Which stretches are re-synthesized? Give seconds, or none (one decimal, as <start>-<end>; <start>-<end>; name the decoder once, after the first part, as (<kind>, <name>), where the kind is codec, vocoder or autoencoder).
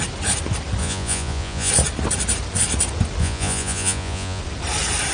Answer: 0.8-1.7 (vocoder, Vocos); 3.2-4.4